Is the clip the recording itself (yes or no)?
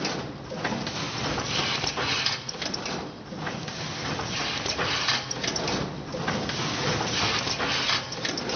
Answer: yes